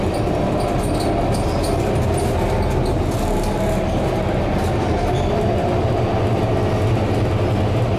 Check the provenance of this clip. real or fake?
real